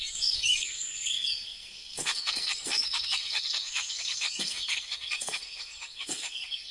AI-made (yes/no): yes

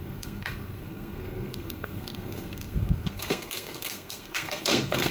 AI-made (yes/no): yes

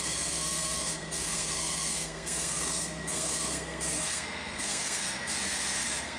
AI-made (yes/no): yes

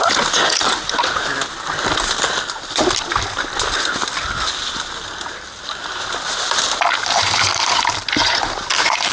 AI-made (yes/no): no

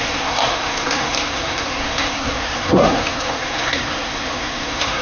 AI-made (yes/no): yes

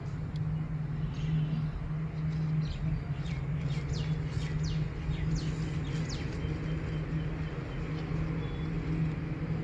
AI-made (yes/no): no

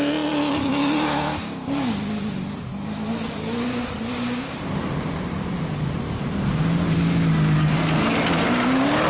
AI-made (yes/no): no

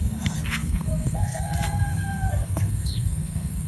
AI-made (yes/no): yes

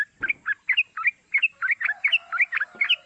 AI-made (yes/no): no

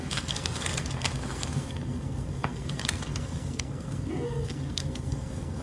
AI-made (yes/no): yes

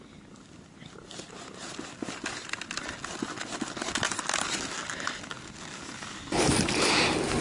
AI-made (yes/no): no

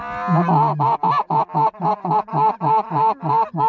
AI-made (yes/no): no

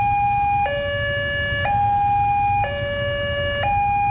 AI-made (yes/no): no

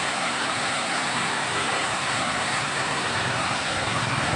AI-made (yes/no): yes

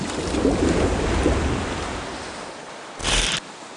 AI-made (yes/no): no